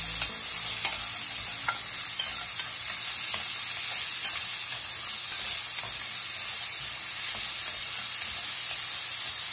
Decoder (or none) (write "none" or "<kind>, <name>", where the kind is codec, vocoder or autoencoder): none